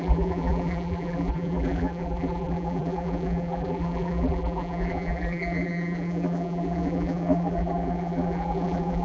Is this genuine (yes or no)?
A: no